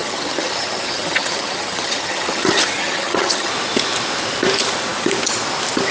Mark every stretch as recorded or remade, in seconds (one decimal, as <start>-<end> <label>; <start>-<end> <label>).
0.0-3.5 remade; 3.5-5.9 recorded